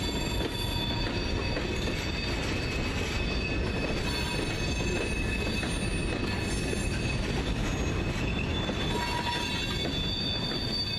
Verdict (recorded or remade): recorded